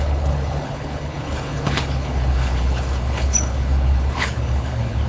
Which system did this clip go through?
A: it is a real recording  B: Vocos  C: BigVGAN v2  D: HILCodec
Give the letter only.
D